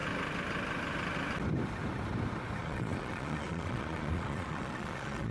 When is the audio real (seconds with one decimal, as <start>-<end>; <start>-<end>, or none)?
0.0-2.6